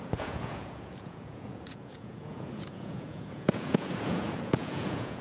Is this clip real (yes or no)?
no